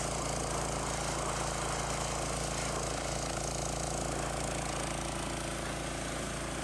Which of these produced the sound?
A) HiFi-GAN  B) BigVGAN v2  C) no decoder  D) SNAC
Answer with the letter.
C